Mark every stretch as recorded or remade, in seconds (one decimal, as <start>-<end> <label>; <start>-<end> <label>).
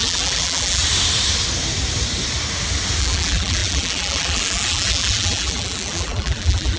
0.0-0.8 remade; 0.8-3.0 recorded; 3.0-6.8 remade